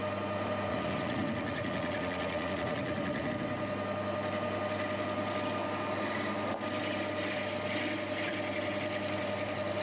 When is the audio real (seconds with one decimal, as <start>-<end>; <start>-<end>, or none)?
0.0-0.7; 3.3-9.8